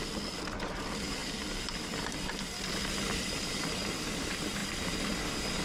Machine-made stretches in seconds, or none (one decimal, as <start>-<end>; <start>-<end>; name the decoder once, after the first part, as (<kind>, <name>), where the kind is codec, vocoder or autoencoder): none

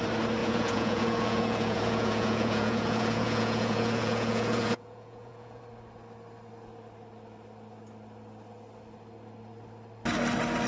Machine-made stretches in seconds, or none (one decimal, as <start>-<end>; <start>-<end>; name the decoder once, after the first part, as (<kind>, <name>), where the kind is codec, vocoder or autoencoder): 0.4-5.6 (vocoder, Vocos)

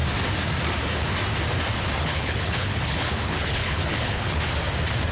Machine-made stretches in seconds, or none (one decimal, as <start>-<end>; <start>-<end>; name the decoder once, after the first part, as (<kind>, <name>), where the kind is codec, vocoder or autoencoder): 2.0-4.4 (codec, HILCodec)

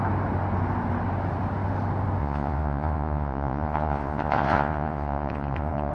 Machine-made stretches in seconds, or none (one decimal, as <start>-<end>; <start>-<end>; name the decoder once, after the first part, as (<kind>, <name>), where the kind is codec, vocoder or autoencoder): 2.2-5.9 (vocoder, Vocos)

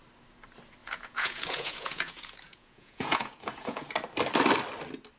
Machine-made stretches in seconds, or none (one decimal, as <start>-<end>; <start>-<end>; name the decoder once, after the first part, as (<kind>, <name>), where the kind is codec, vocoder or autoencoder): 0.8-3.9 (vocoder, Vocos)

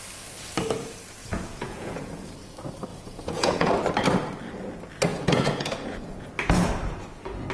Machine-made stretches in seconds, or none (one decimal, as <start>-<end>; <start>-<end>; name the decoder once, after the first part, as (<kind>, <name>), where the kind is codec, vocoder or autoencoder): 1.2-2.3 (vocoder, Vocos); 2.9-3.7; 5.1-6.3

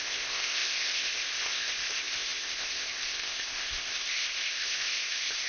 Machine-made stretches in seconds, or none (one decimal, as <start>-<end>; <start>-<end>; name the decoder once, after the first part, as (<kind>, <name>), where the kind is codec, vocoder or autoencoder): 0.0-5.5 (codec, ZipCodec)

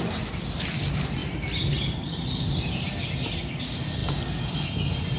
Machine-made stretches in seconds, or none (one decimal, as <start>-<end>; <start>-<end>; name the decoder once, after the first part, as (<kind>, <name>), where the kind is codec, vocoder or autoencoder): none